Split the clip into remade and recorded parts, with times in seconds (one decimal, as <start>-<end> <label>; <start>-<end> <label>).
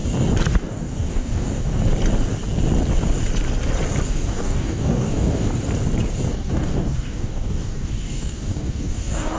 0.0-0.6 recorded; 0.6-1.8 remade; 1.8-4.1 recorded; 4.1-5.5 remade; 5.5-6.3 recorded; 6.3-9.4 remade